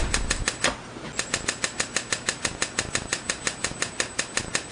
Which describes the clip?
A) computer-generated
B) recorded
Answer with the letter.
B